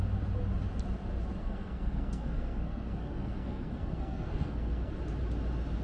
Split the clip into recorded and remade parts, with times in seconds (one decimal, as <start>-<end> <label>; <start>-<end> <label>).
0.0-1.4 recorded; 1.4-4.9 remade; 4.9-5.8 recorded